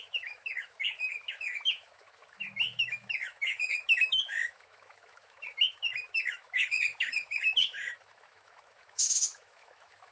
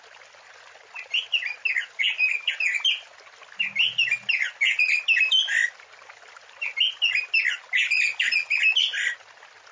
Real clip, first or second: second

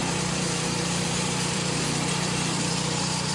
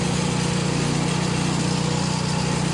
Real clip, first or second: second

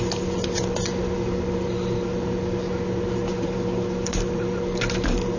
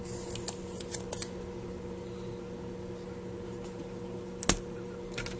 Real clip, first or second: second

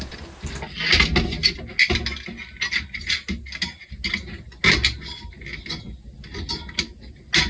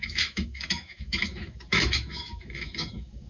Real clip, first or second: first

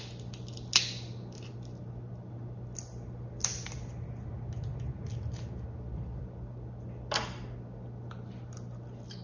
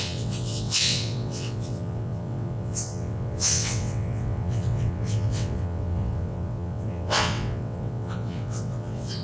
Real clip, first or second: first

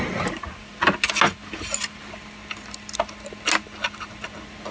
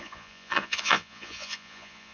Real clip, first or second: first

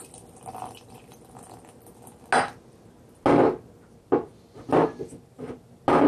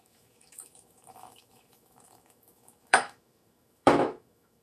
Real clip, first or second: first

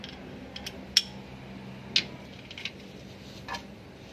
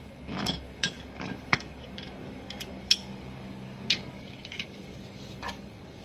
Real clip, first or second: first